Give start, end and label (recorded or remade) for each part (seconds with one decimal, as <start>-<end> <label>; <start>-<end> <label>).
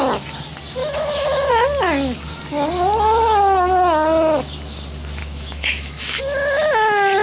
0.0-0.8 recorded; 0.8-1.5 remade; 1.5-5.2 recorded; 5.2-6.2 remade; 6.2-7.2 recorded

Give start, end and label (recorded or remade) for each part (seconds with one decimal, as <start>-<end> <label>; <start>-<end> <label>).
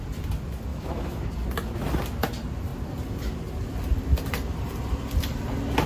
0.0-0.7 recorded; 0.7-1.3 remade; 1.3-5.9 recorded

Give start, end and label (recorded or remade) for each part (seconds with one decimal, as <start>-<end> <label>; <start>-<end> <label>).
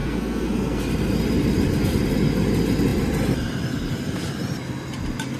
0.0-0.8 remade; 0.8-5.4 recorded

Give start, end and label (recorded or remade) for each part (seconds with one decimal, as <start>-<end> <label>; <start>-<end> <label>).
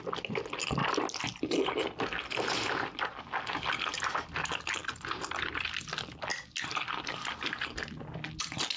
0.0-8.8 recorded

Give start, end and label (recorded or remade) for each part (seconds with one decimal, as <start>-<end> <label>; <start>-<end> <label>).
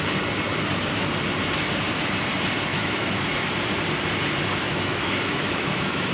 0.0-2.7 recorded; 2.7-3.5 remade; 3.5-4.6 recorded; 4.6-6.1 remade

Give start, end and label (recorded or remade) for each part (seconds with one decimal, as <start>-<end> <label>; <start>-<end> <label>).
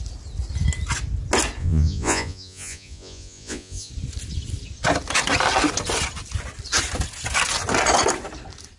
0.0-1.6 recorded; 1.6-3.9 remade; 3.9-8.8 recorded